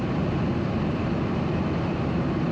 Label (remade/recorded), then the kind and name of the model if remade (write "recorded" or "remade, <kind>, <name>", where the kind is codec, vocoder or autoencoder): remade, vocoder, BigVGAN v2